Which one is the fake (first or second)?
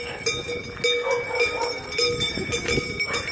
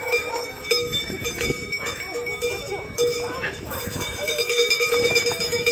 second